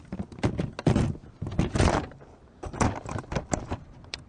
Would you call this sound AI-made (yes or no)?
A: no